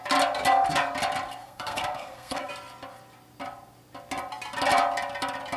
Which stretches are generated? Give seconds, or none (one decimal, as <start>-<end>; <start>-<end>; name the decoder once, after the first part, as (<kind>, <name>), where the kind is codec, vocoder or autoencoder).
1.4-2.5 (codec, SNAC)